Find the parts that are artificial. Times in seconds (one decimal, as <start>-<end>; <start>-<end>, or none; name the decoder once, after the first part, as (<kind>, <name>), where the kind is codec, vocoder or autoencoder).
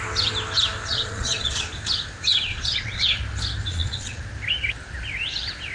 0.9-1.7 (vocoder, Vocos); 2.3-3.2; 3.7-4.2